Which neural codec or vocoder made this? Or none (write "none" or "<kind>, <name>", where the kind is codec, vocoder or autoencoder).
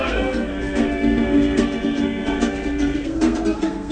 codec, SNAC